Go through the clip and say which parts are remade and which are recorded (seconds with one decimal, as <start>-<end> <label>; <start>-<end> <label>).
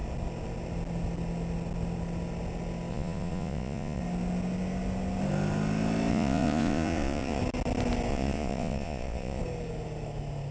0.0-2.9 recorded; 2.9-4.0 remade; 4.0-6.1 recorded; 6.1-7.4 remade; 7.4-8.1 recorded; 8.1-9.4 remade; 9.4-10.5 recorded